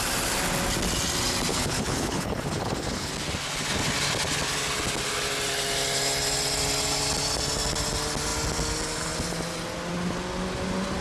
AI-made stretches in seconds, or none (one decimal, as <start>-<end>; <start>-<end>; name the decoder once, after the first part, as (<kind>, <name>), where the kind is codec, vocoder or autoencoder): 1.5-3.1 (codec, HILCodec)

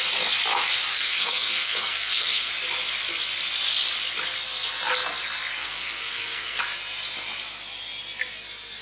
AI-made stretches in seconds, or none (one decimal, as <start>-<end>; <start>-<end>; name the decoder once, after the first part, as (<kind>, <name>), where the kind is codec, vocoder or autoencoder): 0.9-2.5 (codec, SNAC); 5.6-6.6

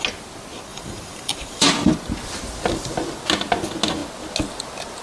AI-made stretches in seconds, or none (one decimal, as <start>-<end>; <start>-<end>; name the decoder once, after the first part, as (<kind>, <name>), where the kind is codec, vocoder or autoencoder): 0.7-1.7 (vocoder, BigVGAN v2)

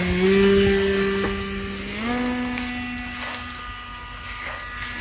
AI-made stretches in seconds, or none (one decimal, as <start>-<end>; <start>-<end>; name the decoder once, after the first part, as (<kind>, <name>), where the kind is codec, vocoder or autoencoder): none

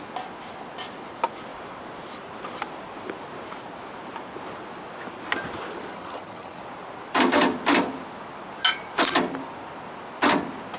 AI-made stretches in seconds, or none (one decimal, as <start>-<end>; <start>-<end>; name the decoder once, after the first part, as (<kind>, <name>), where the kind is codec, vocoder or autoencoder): 5.9-6.6 (vocoder, HiFi-GAN)